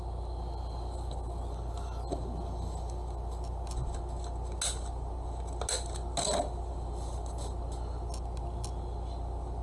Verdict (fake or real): real